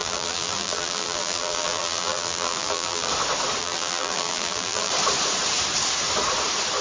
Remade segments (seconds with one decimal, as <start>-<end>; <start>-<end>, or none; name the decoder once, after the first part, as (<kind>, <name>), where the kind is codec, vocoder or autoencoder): 0.0-3.1 (vocoder, BigVGAN v2); 3.6-4.9